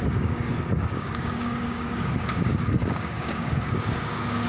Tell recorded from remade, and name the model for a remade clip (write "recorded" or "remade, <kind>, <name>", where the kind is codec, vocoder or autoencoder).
remade, codec, DAC